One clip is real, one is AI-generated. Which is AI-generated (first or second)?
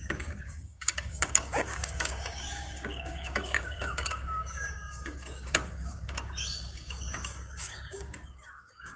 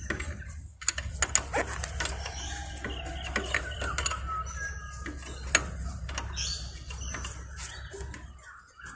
first